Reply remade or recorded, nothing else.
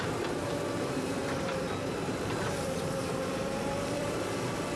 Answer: remade